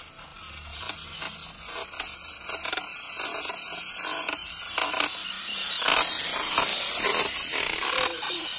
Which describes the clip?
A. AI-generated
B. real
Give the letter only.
B